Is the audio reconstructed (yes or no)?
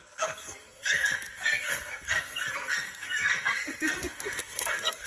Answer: yes